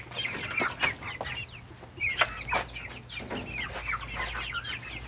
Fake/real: real